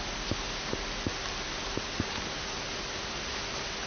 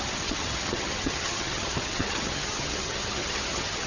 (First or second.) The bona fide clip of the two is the first